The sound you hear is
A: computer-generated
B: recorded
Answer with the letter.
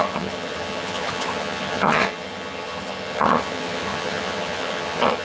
A